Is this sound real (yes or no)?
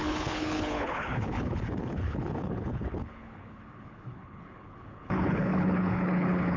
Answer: no